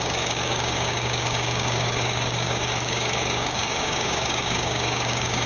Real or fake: fake